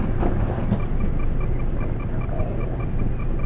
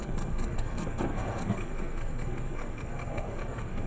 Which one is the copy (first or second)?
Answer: second